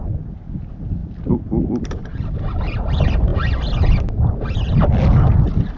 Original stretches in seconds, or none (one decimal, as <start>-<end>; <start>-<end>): 0.0-1.0; 2.6-5.8